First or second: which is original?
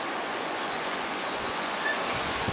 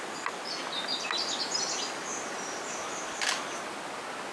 second